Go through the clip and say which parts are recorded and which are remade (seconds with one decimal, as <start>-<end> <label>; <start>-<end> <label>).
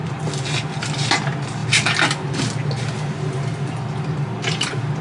0.0-5.0 recorded